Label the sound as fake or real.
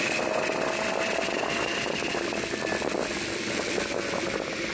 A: real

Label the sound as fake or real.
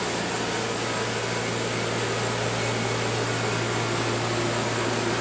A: real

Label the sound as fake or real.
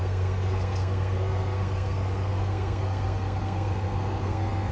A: fake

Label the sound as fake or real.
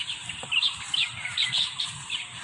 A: fake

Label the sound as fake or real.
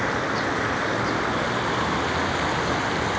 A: real